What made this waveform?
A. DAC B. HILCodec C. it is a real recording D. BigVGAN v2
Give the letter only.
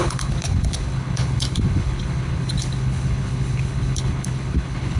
B